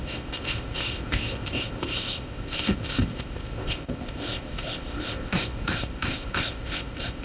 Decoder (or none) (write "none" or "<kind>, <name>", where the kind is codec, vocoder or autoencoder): codec, ZipCodec